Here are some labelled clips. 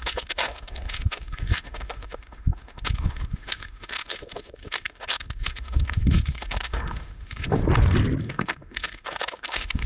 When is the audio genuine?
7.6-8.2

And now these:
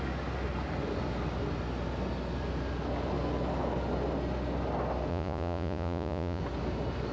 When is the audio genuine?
0.0-5.1; 6.4-7.1

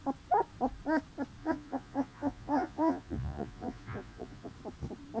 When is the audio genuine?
0.0-1.4; 4.5-5.2

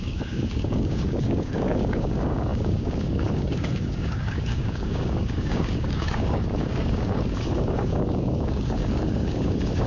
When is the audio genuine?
none

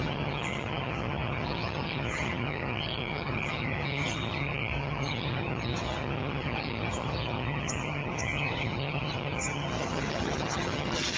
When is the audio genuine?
none